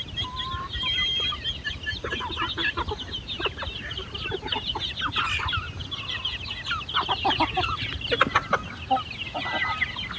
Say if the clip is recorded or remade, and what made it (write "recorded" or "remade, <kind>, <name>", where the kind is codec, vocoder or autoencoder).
recorded